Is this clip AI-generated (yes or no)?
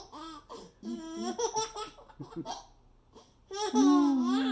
no